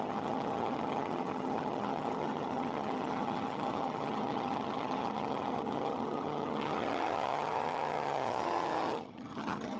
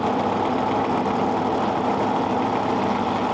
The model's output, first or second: first